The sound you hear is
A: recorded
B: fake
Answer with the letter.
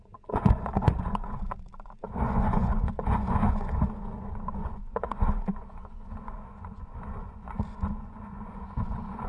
B